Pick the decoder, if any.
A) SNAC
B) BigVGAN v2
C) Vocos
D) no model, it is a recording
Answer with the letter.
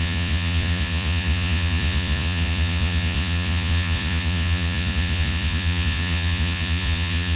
C